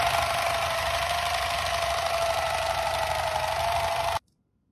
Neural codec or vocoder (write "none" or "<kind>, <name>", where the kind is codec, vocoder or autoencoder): none